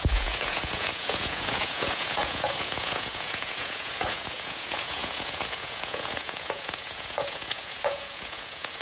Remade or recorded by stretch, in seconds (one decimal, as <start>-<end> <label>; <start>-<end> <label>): 0.0-8.8 remade